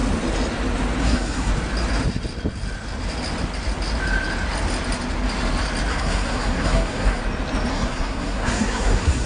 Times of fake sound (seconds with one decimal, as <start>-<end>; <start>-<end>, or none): 1.0-1.5; 5.9-7.2; 7.7-9.3